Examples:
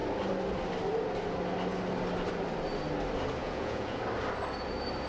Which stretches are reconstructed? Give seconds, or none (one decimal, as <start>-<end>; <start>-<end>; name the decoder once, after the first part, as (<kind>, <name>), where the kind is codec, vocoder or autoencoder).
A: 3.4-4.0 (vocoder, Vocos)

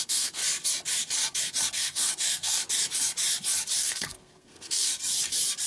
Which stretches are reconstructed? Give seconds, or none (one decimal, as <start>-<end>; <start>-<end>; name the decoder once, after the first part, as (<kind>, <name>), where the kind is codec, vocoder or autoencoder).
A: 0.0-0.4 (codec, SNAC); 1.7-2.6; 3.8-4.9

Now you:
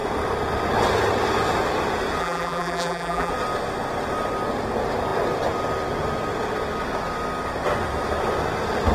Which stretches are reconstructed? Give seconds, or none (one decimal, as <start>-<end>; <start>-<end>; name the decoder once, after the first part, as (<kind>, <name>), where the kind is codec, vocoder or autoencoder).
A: 2.2-3.3 (vocoder, BigVGAN v2)